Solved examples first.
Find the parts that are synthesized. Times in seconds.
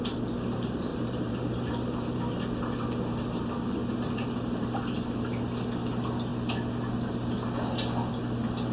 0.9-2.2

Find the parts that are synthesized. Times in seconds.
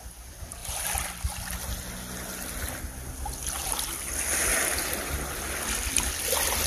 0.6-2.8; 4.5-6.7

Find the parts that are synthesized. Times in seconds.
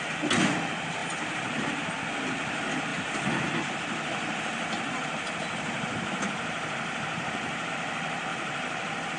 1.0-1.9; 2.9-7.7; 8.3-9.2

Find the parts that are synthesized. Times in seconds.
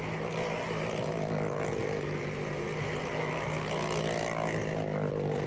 none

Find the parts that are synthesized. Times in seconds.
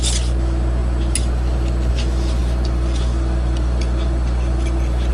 2.4-5.1